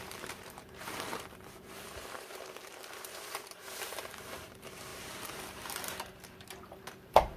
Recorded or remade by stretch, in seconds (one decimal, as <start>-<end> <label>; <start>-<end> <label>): 0.0-7.4 remade